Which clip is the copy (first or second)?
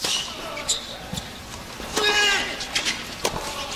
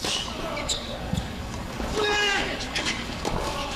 second